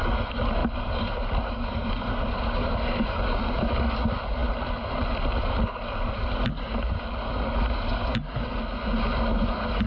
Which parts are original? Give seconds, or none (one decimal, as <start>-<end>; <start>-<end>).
0.0-0.6; 1.1-9.9